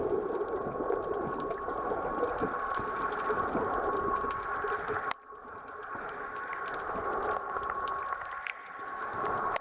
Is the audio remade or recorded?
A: recorded